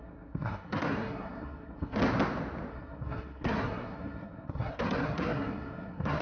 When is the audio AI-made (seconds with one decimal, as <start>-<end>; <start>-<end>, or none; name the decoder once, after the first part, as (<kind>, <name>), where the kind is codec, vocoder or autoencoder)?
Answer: 0.0-2.0 (codec, SNAC); 2.7-6.2

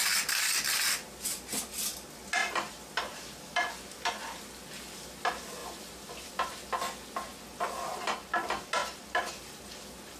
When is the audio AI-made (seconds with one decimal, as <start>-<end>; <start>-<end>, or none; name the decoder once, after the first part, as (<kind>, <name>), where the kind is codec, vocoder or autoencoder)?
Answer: 5.6-6.3 (vocoder, BigVGAN v2); 7.3-7.9

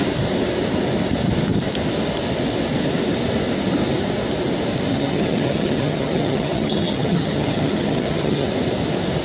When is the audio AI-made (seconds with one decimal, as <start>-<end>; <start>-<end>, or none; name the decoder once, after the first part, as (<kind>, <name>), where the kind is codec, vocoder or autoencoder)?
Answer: 4.9-8.5 (vocoder, HiFi-GAN)

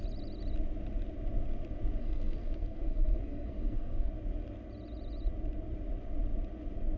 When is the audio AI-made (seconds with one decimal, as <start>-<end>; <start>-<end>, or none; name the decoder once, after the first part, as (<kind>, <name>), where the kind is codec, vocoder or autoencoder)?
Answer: 2.0-4.1 (codec, SNAC)

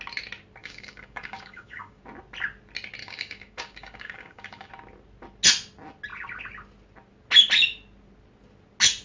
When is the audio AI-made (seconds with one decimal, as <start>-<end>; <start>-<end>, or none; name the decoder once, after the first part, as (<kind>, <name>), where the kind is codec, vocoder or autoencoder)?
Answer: 0.6-2.0 (codec, DAC); 3.0-4.7

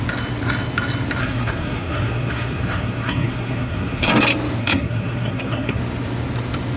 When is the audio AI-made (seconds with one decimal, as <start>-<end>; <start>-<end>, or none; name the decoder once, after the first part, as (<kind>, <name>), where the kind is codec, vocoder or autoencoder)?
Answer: 1.2-4.1 (codec, SNAC); 4.6-5.8

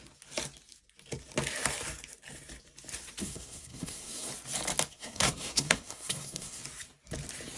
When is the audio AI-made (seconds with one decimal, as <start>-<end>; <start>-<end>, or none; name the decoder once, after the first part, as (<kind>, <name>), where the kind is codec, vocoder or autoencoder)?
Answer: 3.2-4.3 (codec, SNAC); 4.9-6.6

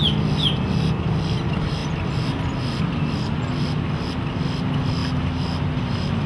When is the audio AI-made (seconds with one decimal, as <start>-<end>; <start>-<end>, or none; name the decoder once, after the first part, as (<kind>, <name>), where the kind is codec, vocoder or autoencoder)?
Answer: none